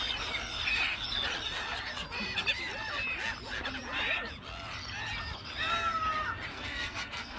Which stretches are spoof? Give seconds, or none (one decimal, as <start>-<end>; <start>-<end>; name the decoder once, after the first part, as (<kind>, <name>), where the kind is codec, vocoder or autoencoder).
6.5-7.4 (codec, SNAC)